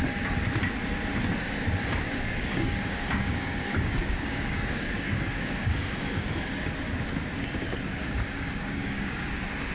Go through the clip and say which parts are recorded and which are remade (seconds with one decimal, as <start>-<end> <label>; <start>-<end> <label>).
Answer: 0.0-1.8 recorded; 1.8-6.4 remade; 6.4-8.0 recorded; 8.0-9.2 remade; 9.2-9.7 recorded